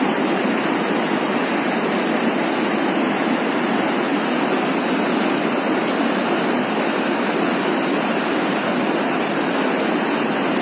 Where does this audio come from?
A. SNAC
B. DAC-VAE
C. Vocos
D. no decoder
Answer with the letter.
D